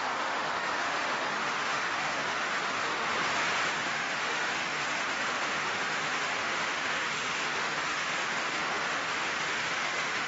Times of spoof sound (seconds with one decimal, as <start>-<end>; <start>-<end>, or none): 0.0-3.1; 3.7-10.3